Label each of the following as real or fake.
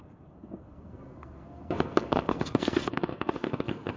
fake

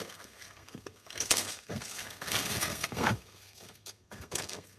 fake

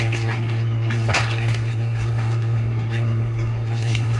fake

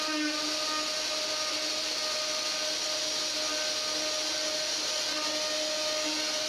real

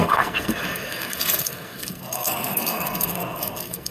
fake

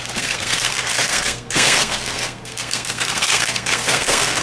fake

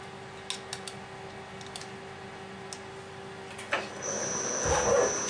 real